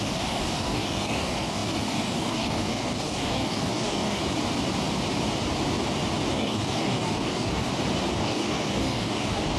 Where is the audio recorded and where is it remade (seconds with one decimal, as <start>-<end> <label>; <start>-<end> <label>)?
0.0-4.2 remade; 4.2-6.3 recorded; 6.3-7.7 remade; 7.7-8.2 recorded; 8.2-9.6 remade